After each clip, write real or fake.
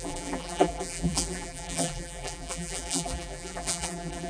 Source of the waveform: fake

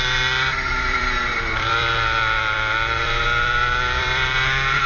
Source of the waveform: fake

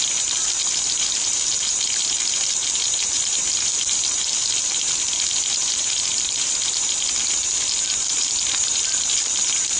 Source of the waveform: fake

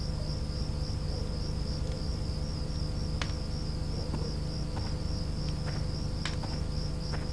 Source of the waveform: real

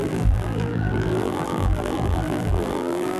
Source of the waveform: fake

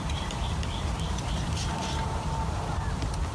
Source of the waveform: fake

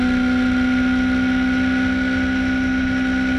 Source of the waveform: real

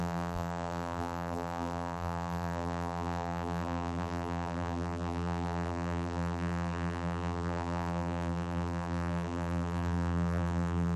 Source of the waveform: fake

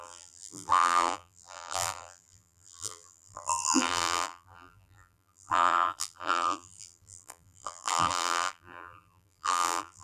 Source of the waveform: fake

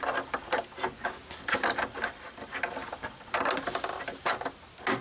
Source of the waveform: real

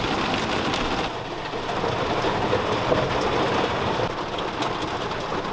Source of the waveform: real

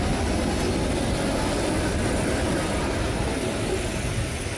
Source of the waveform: real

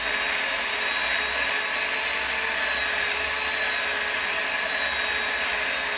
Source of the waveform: real